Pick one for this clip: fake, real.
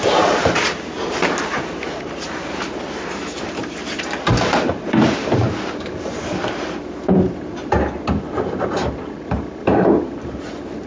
fake